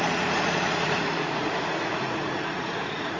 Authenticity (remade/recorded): remade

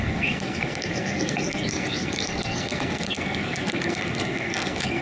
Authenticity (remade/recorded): remade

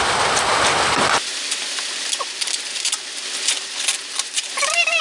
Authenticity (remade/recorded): recorded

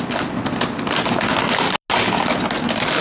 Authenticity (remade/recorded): recorded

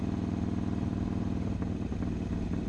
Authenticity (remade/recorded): recorded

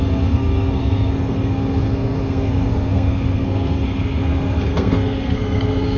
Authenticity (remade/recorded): remade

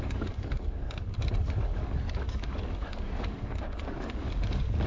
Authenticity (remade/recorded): remade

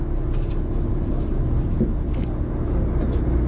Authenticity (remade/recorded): recorded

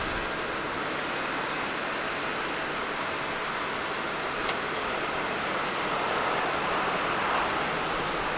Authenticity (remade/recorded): recorded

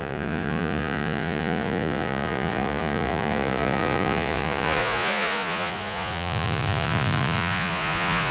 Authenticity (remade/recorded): remade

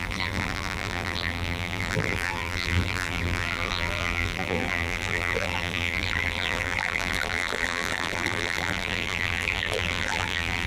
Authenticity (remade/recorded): remade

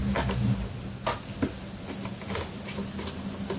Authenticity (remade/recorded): recorded